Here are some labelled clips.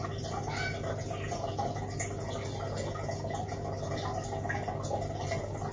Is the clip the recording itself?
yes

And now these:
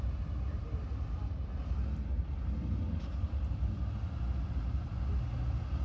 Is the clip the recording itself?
yes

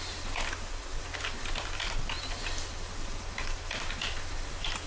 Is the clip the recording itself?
yes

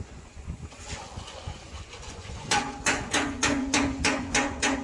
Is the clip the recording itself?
no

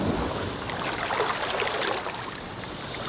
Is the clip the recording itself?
yes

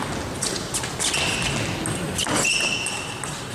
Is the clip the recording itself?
yes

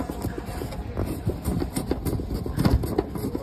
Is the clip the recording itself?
yes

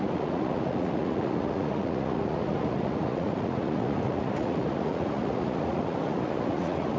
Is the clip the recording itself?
no